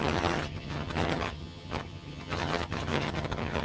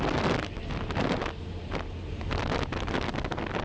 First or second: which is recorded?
second